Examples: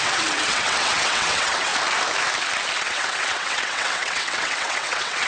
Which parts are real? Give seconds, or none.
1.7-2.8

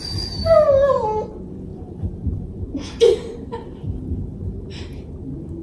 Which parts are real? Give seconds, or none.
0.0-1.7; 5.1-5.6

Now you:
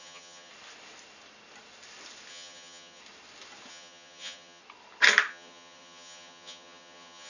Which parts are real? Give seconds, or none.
0.5-2.3; 3.0-3.7; 4.6-5.3

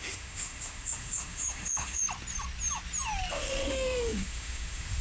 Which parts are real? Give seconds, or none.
2.0-3.3

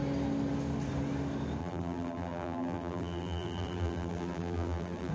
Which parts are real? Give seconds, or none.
0.0-1.6

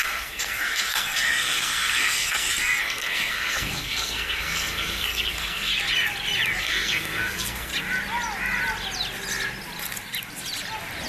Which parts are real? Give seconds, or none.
5.7-6.6; 7.7-11.1